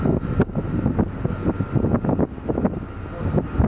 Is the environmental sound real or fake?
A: real